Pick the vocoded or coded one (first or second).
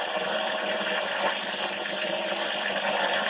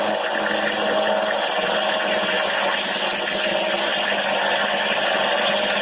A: first